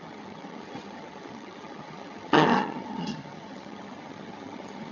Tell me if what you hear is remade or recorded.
remade